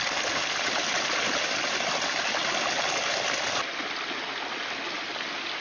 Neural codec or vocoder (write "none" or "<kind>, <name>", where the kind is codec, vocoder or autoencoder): none